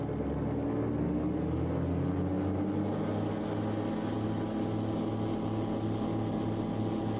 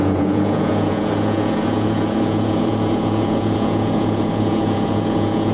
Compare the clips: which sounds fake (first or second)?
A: second